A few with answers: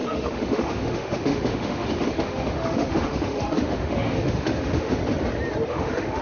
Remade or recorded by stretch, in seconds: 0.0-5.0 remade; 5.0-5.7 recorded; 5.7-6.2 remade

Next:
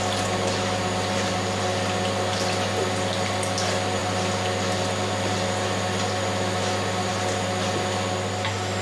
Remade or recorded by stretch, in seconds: 0.0-8.8 recorded

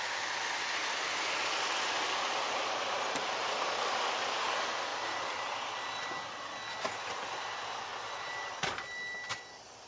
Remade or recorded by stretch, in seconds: 0.0-9.9 recorded

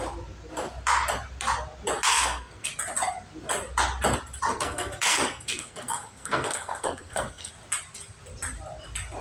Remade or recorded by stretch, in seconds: 0.0-2.1 recorded; 2.1-2.7 remade; 2.7-4.5 recorded; 4.5-7.5 remade; 7.5-9.2 recorded

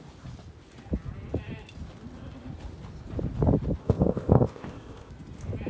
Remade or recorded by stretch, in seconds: 0.0-3.8 recorded; 3.8-5.1 remade; 5.1-5.7 recorded